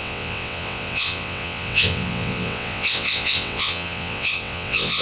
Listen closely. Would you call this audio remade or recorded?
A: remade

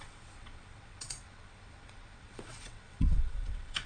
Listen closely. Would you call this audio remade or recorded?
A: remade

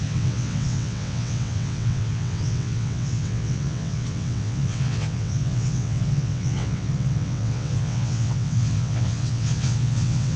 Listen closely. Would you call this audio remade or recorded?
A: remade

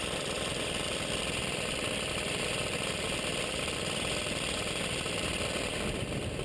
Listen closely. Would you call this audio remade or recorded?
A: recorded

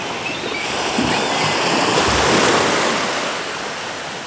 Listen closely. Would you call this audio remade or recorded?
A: recorded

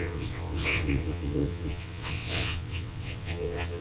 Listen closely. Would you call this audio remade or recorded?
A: remade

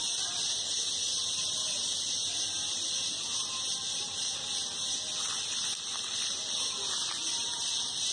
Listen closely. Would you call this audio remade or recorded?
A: recorded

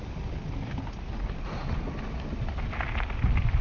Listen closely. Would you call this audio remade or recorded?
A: recorded